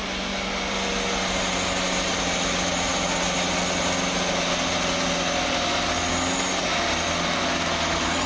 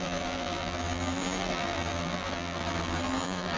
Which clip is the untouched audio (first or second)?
first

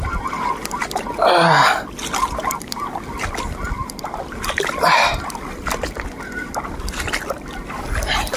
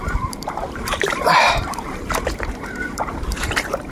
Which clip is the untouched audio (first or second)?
first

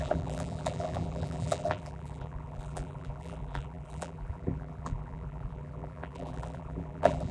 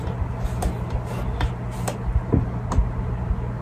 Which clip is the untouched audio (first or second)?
second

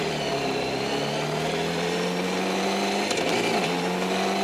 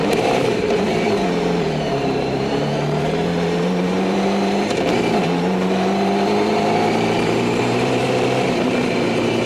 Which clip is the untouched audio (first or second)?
first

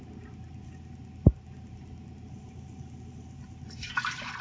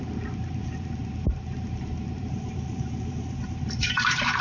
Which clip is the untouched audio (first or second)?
first